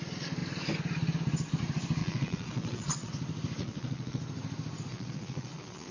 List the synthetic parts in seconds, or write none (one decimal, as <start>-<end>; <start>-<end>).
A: 2.0-3.1; 3.6-4.2; 4.9-5.9